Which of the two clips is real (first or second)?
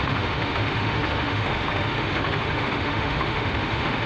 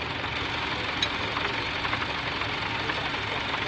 second